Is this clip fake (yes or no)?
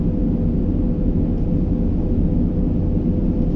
no